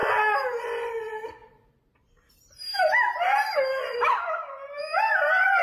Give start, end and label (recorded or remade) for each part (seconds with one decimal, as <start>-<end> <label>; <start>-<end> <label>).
0.0-0.6 recorded; 0.6-5.6 remade